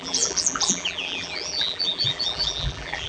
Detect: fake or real fake